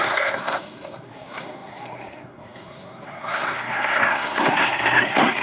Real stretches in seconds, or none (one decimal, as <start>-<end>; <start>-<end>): none